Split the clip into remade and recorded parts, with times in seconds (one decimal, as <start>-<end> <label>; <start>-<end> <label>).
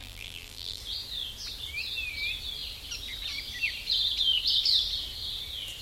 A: 0.0-0.8 remade; 0.8-5.8 recorded